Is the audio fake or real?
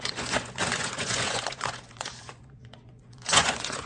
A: fake